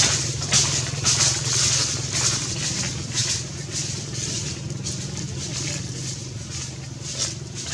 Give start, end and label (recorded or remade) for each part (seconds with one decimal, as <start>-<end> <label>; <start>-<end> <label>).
0.0-7.7 recorded